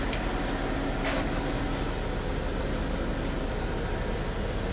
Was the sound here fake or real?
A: real